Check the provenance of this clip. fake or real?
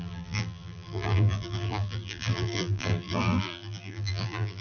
fake